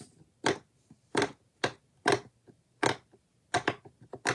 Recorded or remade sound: recorded